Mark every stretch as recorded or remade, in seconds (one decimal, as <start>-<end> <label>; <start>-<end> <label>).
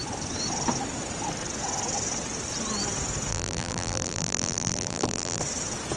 0.0-3.3 recorded; 3.3-5.4 remade; 5.4-6.0 recorded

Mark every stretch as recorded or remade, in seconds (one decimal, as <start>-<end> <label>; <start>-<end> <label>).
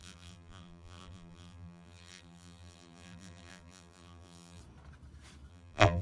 0.0-4.6 remade; 4.6-5.5 recorded; 5.5-6.0 remade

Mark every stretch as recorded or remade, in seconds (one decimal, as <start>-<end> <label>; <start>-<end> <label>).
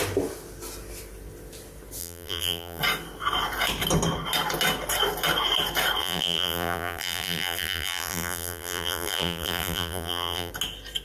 0.0-2.0 recorded; 2.0-2.8 remade; 2.8-6.0 recorded; 6.0-10.5 remade; 10.5-11.0 recorded